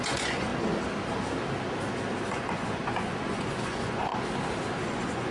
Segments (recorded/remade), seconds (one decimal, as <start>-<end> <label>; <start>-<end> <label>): 0.0-0.5 remade; 0.5-2.3 recorded; 2.3-4.1 remade; 4.1-4.8 recorded; 4.8-5.3 remade

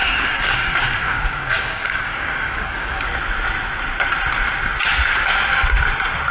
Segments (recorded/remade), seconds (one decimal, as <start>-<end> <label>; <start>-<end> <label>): 0.0-3.1 remade; 3.1-6.3 recorded

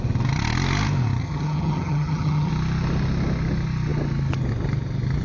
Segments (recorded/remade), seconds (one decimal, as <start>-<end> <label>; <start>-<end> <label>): 0.0-1.2 recorded; 1.2-2.5 remade; 2.5-5.2 recorded

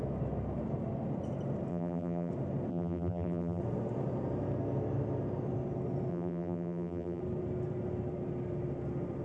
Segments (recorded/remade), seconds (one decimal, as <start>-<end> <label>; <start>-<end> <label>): 0.0-1.7 recorded; 1.7-2.3 remade; 2.3-2.7 recorded; 2.7-3.6 remade; 3.6-6.1 recorded; 6.1-7.2 remade; 7.2-9.2 recorded

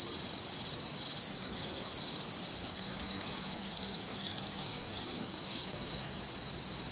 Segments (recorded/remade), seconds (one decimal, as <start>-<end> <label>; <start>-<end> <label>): 0.0-1.3 recorded; 1.3-1.9 remade; 1.9-2.6 recorded; 2.6-6.2 remade; 6.2-6.9 recorded

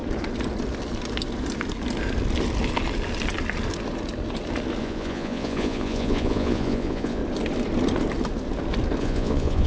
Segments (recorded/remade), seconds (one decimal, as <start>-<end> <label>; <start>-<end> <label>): 0.0-4.8 recorded; 4.8-7.2 remade; 7.2-9.0 recorded; 9.0-9.7 remade

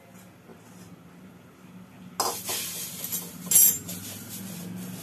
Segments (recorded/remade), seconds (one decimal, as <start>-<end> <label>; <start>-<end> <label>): 0.0-5.0 recorded

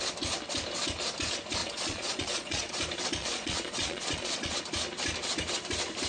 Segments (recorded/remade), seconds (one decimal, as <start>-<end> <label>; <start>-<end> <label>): 0.0-1.6 recorded; 1.6-2.7 remade; 2.7-3.2 recorded; 3.2-4.6 remade; 4.6-6.1 recorded